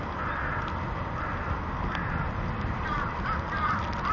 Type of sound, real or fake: real